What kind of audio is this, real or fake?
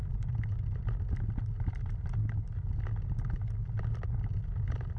real